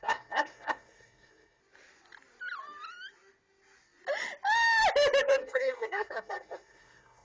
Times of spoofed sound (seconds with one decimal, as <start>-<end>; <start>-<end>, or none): 0.0-1.6; 5.2-7.2